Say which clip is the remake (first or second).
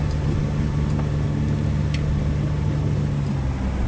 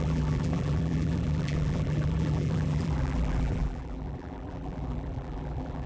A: second